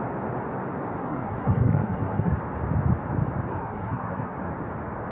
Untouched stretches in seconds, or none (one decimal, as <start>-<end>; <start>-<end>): 0.0-1.0; 2.4-3.5; 4.5-5.1